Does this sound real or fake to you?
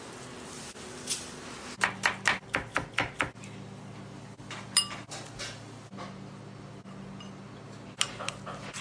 real